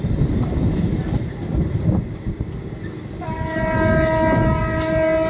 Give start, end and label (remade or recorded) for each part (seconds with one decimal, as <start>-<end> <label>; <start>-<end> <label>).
0.0-5.3 recorded